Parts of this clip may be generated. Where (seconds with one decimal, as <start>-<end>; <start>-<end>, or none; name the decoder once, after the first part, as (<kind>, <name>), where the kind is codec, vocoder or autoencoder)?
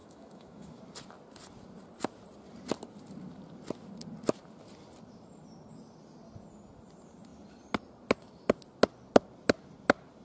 0.0-0.8 (autoencoder, DAC-VAE)